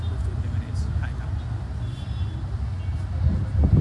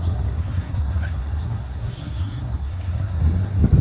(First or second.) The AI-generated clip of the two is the second